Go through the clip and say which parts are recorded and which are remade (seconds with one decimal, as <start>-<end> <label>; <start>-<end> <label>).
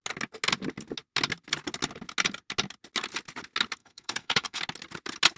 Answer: 0.0-3.8 recorded; 3.8-4.6 remade; 4.6-5.4 recorded